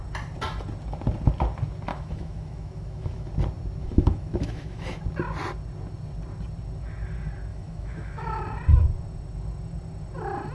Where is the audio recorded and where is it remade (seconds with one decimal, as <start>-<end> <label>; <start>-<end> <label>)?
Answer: 0.0-1.9 recorded; 1.9-3.3 remade; 3.3-3.8 recorded; 3.8-5.0 remade; 5.0-7.5 recorded; 7.5-8.4 remade; 8.4-10.5 recorded